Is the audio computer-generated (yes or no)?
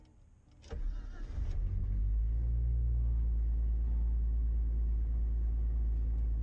no